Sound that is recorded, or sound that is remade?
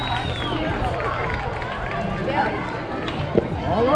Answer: remade